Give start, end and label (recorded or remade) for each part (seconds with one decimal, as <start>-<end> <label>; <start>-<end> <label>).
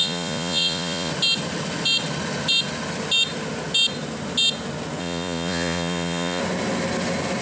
0.0-1.1 remade; 1.1-5.0 recorded; 5.0-6.4 remade; 6.4-7.4 recorded